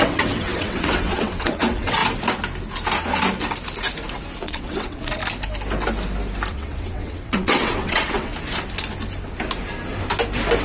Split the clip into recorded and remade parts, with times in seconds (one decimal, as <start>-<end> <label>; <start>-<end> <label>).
0.0-2.0 remade; 2.0-4.4 recorded; 4.4-5.2 remade; 5.2-6.5 recorded; 6.5-8.3 remade; 8.3-10.6 recorded